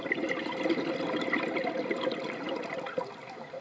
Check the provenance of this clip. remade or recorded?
recorded